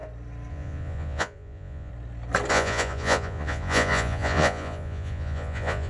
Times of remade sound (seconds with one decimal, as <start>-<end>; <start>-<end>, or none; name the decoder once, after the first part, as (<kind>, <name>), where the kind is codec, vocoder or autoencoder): 0.5-1.9 (vocoder, Vocos); 2.5-5.9